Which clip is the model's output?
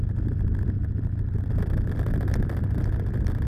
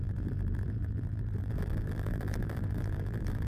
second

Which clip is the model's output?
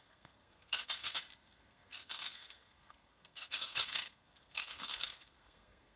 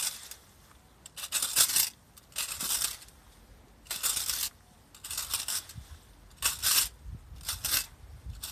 first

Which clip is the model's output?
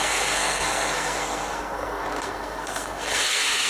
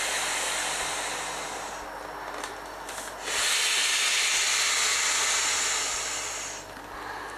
first